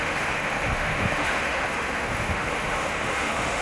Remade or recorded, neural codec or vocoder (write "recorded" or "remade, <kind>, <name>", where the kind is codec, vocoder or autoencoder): remade, autoencoder, DAC-VAE